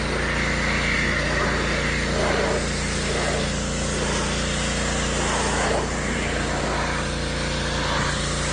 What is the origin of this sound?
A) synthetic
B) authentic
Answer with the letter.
B